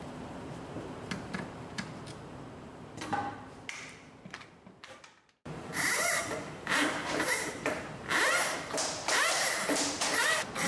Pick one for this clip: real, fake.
fake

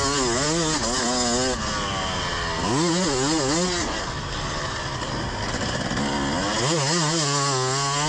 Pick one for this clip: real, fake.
real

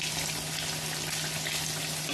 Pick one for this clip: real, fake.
real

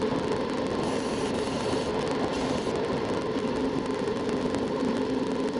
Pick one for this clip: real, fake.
real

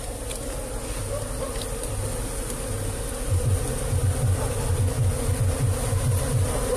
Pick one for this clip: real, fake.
real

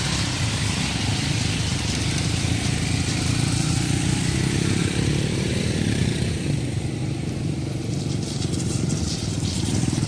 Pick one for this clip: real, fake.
fake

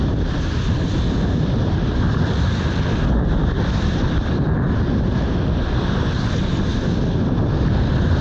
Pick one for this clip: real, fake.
real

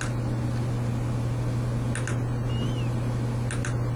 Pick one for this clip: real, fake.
real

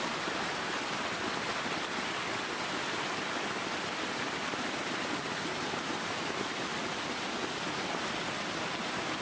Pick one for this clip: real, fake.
real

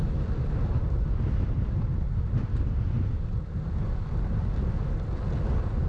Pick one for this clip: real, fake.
real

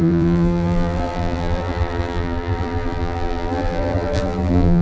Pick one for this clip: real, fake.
fake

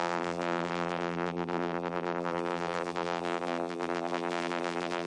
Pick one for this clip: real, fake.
fake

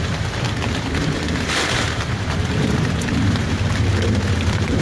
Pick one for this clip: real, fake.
fake